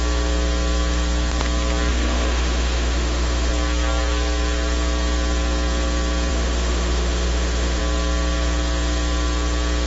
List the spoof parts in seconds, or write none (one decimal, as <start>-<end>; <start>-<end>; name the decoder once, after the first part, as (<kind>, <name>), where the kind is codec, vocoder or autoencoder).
1.9-3.5 (autoencoder, DAC-VAE); 6.3-7.8